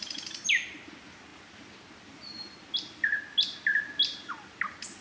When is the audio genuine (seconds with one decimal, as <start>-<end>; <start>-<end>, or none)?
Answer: 0.0-5.0